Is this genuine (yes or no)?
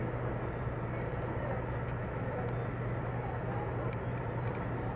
yes